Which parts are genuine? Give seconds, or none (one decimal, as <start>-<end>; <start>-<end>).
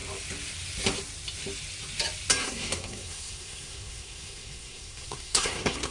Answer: 0.0-2.4